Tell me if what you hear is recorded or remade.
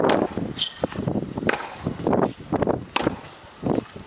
recorded